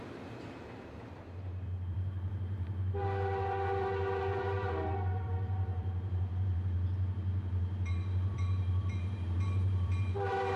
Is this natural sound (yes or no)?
no